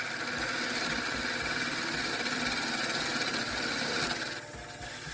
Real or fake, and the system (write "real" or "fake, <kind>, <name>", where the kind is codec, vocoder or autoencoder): real